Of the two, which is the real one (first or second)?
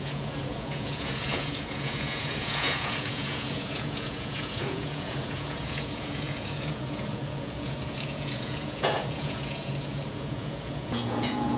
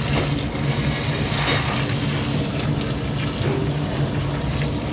second